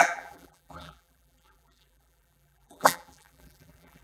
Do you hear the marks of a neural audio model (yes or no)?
yes